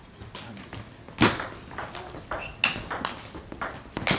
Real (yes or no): yes